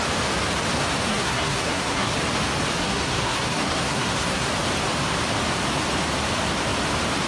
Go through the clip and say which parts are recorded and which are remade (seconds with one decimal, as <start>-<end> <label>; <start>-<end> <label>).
0.0-1.1 recorded; 1.1-2.1 remade; 2.1-2.8 recorded; 2.8-4.5 remade; 4.5-7.3 recorded